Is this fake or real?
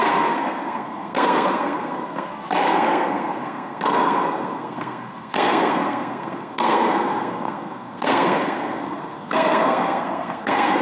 fake